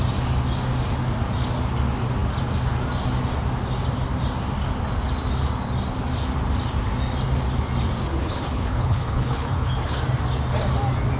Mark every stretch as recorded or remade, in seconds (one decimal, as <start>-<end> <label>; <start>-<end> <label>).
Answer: 0.0-8.2 recorded; 8.2-10.0 remade; 10.0-11.2 recorded